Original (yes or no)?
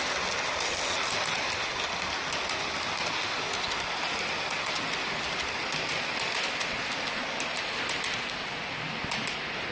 yes